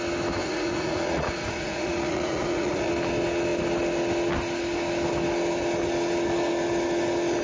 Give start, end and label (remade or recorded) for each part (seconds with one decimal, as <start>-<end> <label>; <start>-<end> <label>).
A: 0.0-0.4 recorded; 0.4-2.9 remade; 2.9-7.4 recorded